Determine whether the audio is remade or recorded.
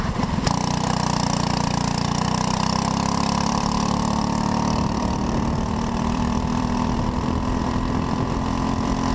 remade